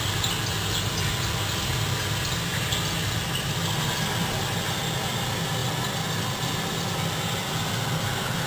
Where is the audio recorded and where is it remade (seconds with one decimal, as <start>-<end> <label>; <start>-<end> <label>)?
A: 0.0-8.5 recorded

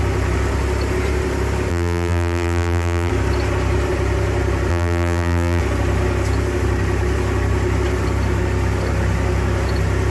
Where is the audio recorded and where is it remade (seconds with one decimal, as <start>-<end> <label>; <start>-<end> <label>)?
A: 0.0-1.7 recorded; 1.7-3.1 remade; 3.1-4.7 recorded; 4.7-5.6 remade; 5.6-10.1 recorded